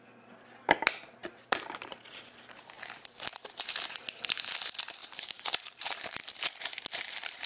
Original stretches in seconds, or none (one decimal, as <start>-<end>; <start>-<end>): 0.0-1.2; 3.0-5.0; 5.9-7.5